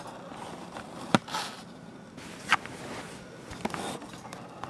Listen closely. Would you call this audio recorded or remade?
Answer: recorded